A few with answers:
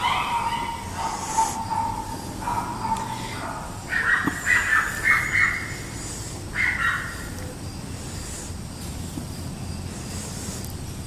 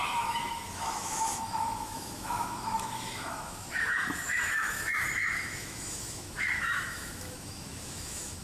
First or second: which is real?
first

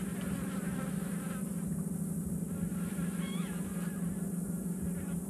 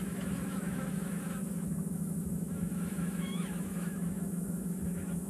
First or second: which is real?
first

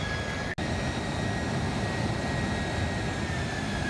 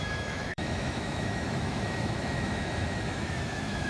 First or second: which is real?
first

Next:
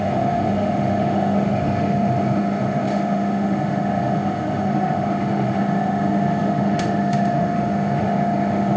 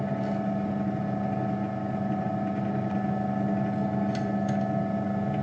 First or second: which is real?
second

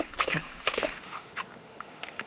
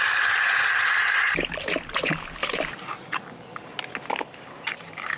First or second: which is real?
second